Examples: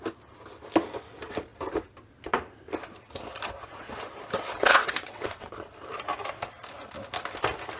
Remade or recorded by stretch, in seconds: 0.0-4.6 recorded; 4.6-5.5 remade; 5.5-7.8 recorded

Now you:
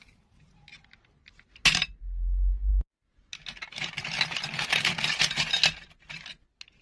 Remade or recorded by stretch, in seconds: 0.0-6.8 recorded

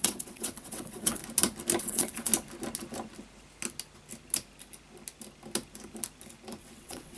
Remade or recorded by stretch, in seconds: 0.0-1.2 remade; 1.2-1.8 recorded; 1.8-2.3 remade; 2.3-6.6 recorded; 6.6-7.2 remade

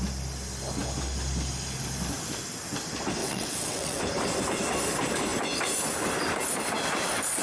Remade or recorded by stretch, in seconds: 0.0-3.2 recorded; 3.2-4.0 remade; 4.0-7.4 recorded